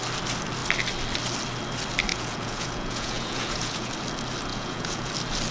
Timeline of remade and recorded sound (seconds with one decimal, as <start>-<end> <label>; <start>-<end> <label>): 0.0-2.1 recorded; 2.1-3.9 remade; 3.9-4.5 recorded; 4.5-5.1 remade; 5.1-5.5 recorded

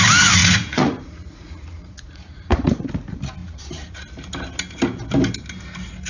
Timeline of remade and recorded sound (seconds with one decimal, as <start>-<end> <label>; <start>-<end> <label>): 0.0-0.4 recorded; 0.4-2.9 remade; 2.9-3.4 recorded; 3.4-4.0 remade; 4.0-6.1 recorded

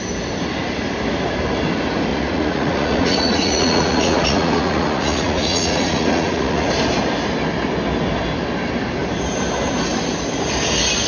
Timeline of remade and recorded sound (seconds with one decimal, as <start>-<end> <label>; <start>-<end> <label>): 0.0-2.1 recorded; 2.1-6.7 remade; 6.7-11.1 recorded